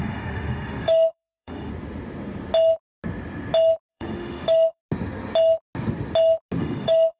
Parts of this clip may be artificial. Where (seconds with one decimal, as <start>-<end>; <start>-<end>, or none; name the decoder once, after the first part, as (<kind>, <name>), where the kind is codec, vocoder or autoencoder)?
0.0-1.7 (autoencoder, DAC-VAE); 3.9-4.8; 6.6-7.2